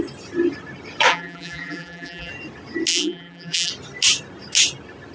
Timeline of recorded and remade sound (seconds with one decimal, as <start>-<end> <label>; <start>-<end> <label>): 0.0-1.1 recorded; 1.1-2.3 remade; 2.3-2.9 recorded; 2.9-3.7 remade; 3.7-5.1 recorded